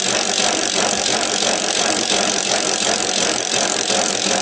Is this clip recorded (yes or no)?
yes